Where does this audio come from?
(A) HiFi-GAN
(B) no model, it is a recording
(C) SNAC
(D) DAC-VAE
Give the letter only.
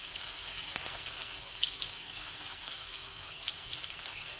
C